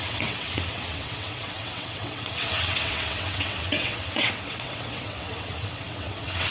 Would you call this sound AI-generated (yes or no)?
yes